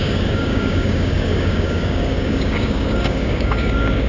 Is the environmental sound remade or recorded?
remade